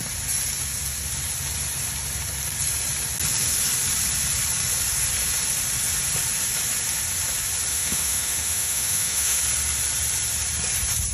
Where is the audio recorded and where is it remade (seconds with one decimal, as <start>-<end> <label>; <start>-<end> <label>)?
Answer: 0.0-7.7 recorded; 7.7-9.4 remade; 9.4-11.1 recorded